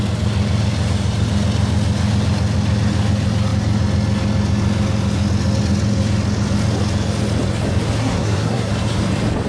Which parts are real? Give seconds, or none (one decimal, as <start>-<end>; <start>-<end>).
0.0-8.0; 8.7-9.5